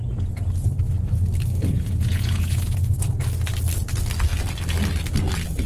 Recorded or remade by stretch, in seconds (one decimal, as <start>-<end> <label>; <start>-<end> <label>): 0.0-1.7 recorded; 1.7-3.1 remade; 3.1-5.7 recorded